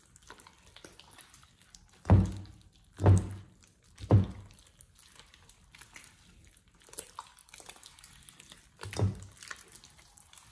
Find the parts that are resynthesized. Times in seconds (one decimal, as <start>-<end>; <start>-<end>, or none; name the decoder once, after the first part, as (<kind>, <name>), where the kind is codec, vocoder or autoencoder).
none